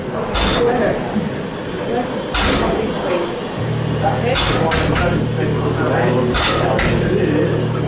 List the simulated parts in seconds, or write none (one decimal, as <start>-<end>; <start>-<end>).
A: none